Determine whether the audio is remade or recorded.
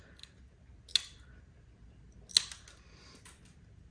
recorded